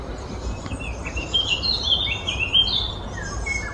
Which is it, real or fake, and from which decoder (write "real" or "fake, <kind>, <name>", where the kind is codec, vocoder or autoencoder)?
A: real